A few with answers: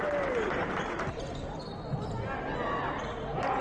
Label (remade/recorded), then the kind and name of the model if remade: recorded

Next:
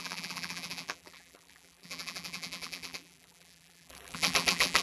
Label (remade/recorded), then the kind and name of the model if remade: remade, vocoder, BigVGAN v2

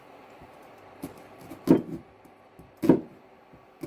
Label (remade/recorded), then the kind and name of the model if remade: recorded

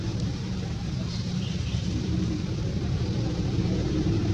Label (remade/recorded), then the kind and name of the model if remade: remade, vocoder, BigVGAN v2